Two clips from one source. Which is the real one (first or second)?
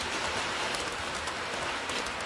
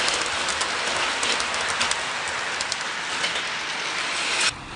second